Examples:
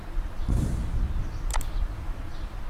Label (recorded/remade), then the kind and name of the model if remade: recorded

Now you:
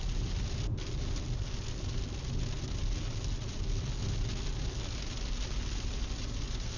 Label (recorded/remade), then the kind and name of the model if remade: recorded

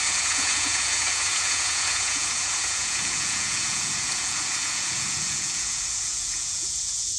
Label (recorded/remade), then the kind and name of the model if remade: remade, vocoder, Vocos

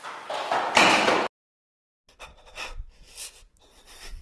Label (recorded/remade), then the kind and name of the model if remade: recorded